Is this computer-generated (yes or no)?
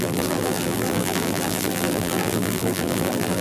yes